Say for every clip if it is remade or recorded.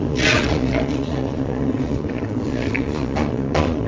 remade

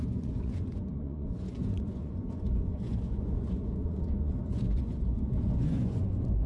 remade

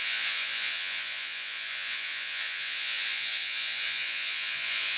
remade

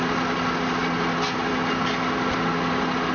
recorded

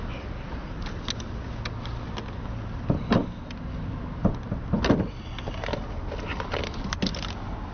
recorded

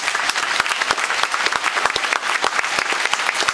recorded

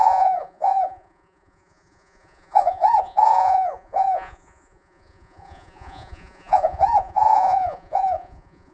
remade